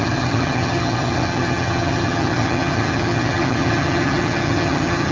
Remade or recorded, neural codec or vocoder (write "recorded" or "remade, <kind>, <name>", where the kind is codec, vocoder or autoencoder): remade, vocoder, HiFi-GAN